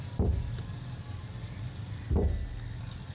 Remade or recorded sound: recorded